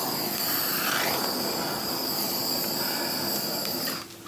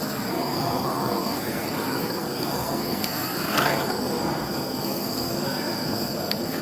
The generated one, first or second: second